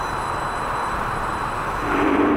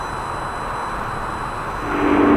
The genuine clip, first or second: second